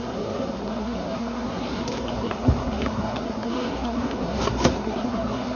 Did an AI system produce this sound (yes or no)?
yes